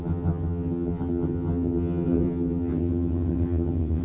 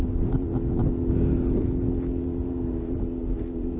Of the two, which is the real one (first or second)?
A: second